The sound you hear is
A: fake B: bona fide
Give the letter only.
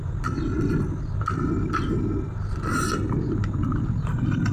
B